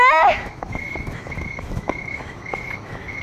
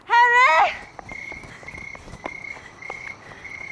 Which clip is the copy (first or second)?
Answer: first